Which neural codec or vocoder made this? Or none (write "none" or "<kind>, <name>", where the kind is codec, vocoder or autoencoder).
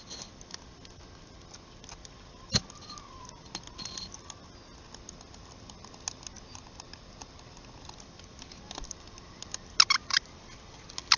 none